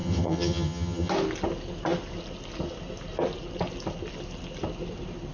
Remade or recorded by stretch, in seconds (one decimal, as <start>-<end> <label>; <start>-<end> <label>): 0.0-1.1 remade; 1.1-5.3 recorded